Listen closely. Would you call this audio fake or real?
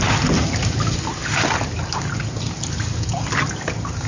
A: real